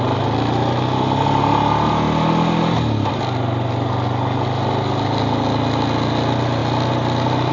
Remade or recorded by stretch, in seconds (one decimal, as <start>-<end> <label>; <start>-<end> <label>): 0.0-7.5 recorded